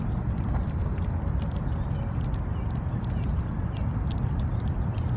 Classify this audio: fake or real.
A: real